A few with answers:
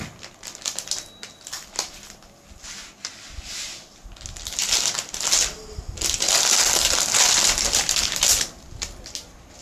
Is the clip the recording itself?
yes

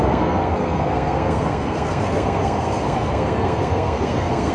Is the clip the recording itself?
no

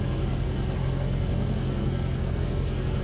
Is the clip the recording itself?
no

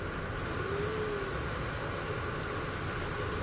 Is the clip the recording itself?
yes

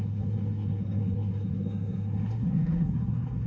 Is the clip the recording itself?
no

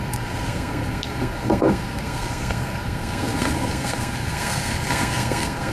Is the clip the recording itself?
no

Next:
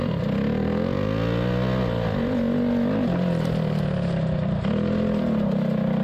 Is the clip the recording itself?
yes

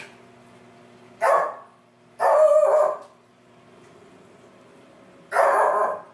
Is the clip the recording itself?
yes